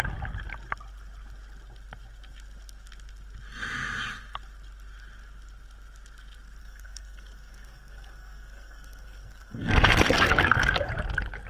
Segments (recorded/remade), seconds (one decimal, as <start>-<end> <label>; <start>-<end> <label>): 0.0-6.6 recorded; 6.6-10.9 remade; 10.9-11.5 recorded